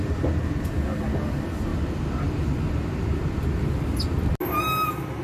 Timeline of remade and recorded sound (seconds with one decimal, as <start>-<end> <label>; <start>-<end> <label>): 0.0-5.2 recorded